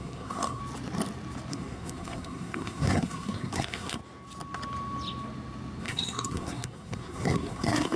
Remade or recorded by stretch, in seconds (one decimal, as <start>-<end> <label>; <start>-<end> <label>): 0.0-0.6 remade; 0.6-1.5 recorded; 1.5-4.0 remade; 4.0-5.8 recorded; 5.8-8.0 remade